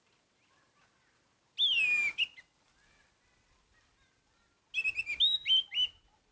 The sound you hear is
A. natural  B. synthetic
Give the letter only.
A